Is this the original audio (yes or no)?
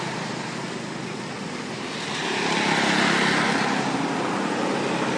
yes